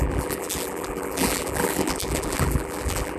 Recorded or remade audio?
remade